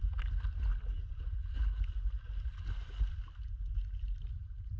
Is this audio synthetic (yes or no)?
no